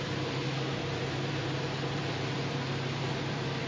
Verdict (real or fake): fake